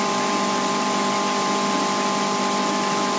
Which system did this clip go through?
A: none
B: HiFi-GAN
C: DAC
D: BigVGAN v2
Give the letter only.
D